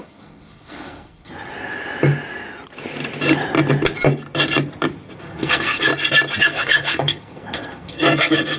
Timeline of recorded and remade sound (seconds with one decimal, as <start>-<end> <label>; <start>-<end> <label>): 0.0-1.3 remade; 1.3-5.2 recorded; 5.2-5.9 remade; 5.9-6.4 recorded; 6.4-8.6 remade